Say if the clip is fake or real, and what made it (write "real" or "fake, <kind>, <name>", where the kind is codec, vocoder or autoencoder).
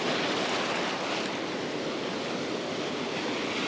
real